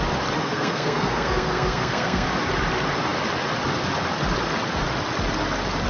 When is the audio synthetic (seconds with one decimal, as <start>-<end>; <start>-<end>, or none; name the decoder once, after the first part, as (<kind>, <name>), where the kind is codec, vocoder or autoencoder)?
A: 0.4-2.3 (codec, SNAC)